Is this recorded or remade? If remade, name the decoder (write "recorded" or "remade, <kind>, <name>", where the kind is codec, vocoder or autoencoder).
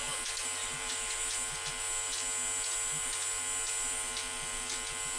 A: recorded